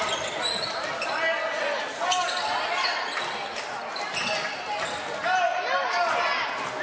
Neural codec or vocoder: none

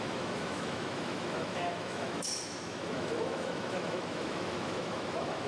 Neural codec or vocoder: autoencoder, DAC-VAE